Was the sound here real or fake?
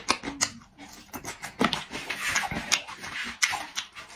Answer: real